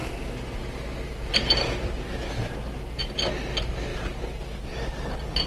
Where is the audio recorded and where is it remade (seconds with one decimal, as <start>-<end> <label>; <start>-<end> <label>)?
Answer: 0.0-3.9 recorded; 3.9-4.4 remade; 4.4-5.5 recorded